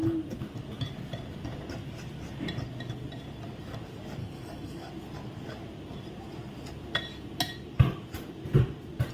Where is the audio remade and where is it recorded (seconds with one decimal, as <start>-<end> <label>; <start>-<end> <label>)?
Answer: 0.0-4.2 recorded; 4.2-4.9 remade; 4.9-9.1 recorded

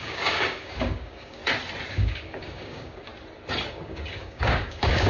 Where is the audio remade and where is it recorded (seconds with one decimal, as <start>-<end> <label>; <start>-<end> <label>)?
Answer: 0.0-1.4 remade; 1.4-1.9 recorded; 1.9-3.1 remade; 3.1-3.7 recorded; 3.7-5.1 remade